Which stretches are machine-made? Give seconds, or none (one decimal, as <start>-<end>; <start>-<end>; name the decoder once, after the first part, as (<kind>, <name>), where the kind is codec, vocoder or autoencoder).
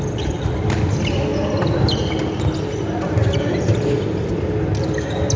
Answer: none